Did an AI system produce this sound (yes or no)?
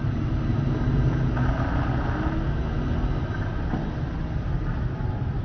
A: no